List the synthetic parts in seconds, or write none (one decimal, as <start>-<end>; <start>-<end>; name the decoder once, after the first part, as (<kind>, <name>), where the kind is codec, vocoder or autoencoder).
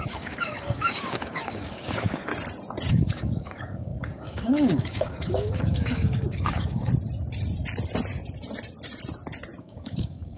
0.0-2.3 (codec, DAC); 2.9-6.9; 9.6-10.4